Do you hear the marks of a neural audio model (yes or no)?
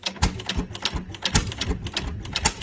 no